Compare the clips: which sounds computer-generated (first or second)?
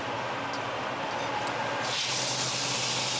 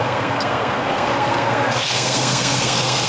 second